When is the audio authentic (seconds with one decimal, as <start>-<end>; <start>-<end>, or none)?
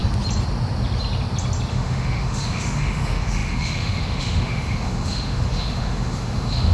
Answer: 0.0-1.7